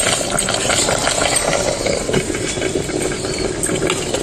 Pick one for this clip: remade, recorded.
recorded